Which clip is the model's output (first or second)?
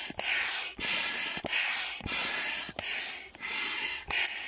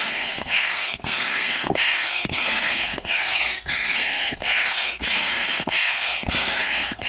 second